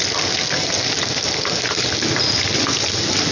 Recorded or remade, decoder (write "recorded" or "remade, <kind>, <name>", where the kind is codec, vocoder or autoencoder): recorded